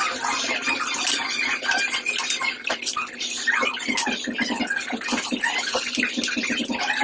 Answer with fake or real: real